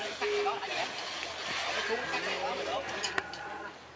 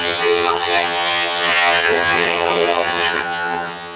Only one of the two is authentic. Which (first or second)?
first